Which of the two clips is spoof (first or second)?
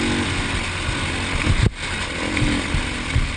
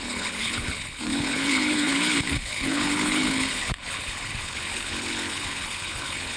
second